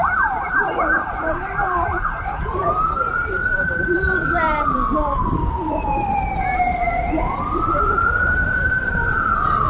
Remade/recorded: remade